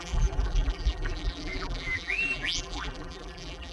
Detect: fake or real fake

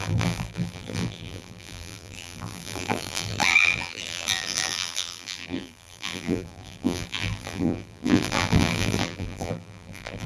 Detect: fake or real fake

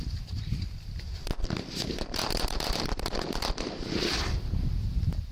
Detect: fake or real fake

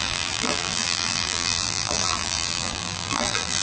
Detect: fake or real fake